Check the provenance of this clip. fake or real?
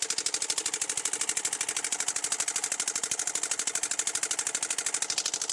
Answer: real